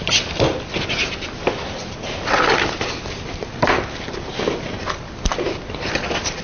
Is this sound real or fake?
real